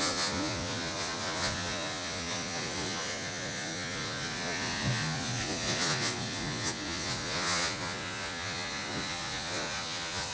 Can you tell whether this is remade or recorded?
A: remade